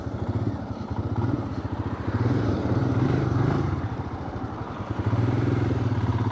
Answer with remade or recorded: remade